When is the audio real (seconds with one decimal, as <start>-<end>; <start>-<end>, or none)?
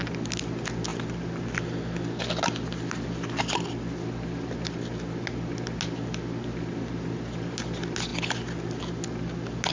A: 0.0-9.7